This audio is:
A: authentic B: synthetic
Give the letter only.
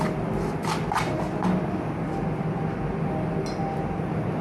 A